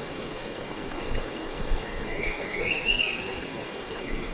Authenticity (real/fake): fake